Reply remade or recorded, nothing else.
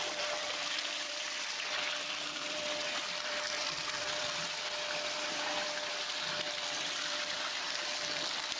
remade